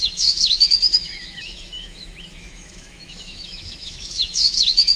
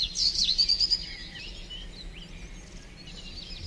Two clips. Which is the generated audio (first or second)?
first